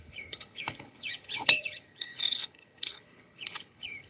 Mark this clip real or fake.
fake